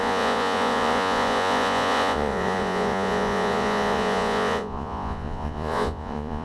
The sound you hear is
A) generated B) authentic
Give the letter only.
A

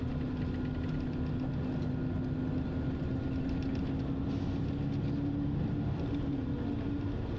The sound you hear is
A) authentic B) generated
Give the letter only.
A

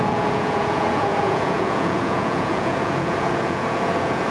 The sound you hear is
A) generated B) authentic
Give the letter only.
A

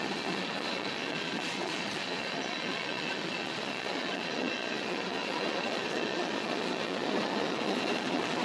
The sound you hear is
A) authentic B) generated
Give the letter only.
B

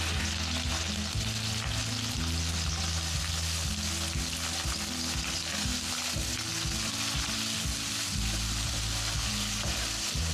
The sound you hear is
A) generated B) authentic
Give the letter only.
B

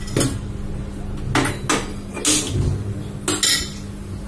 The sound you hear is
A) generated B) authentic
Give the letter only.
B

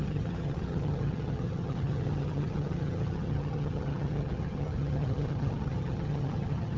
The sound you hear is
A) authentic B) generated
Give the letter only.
B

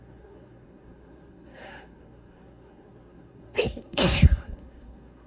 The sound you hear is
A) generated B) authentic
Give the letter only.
A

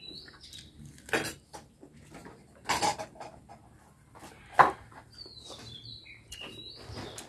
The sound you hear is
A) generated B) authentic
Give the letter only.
B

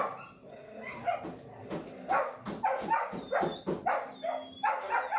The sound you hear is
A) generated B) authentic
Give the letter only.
B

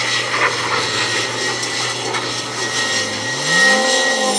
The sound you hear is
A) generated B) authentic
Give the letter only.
B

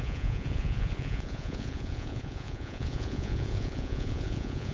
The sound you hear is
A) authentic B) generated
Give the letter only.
B